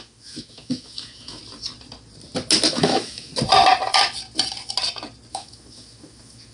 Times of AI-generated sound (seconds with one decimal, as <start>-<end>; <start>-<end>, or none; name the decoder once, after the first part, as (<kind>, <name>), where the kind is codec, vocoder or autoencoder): 0.0-1.4 (autoencoder, DAC-VAE); 2.7-3.3; 5.3-6.5